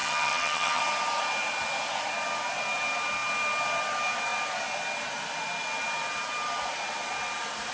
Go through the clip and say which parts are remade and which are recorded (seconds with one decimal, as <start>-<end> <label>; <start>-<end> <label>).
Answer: 0.0-0.8 remade; 0.8-7.7 recorded